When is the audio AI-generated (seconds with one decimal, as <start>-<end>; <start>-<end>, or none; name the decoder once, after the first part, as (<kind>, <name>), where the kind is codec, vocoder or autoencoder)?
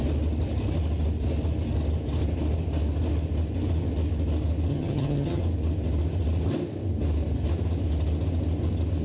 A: 4.7-5.4 (vocoder, HiFi-GAN)